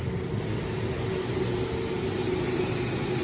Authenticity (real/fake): real